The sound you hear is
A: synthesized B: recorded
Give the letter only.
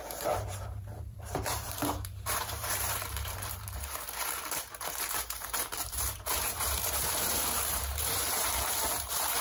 A